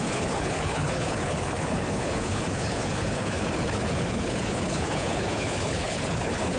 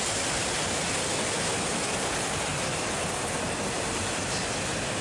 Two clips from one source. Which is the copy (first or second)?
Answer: first